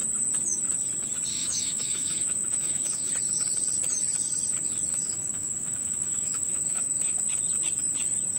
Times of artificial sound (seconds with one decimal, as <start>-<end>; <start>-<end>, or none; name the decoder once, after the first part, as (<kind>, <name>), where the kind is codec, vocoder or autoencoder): 1.3-3.1 (autoencoder, DAC-VAE); 4.9-7.2

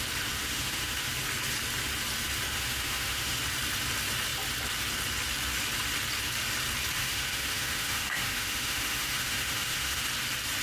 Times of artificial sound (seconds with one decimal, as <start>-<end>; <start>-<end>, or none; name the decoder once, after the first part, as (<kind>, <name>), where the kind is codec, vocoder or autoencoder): 0.4-1.1 (autoencoder, DAC-VAE); 2.5-3.4; 7.0-10.0

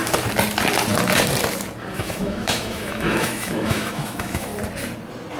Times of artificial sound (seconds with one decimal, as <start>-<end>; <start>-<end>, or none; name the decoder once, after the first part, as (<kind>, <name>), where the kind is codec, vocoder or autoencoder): 1.9-4.5 (autoencoder, DAC-VAE)